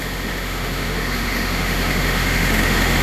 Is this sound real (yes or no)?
no